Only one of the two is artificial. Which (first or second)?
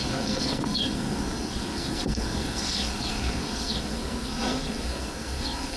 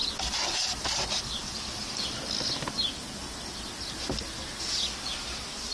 first